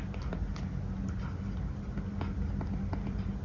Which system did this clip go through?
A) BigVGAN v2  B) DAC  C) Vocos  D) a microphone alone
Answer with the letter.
D